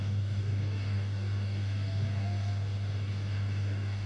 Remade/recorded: remade